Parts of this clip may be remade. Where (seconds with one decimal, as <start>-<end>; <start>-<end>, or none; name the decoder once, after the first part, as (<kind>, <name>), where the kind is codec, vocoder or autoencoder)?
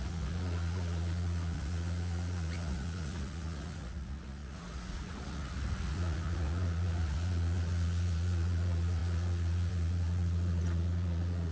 0.0-11.5 (vocoder, Vocos)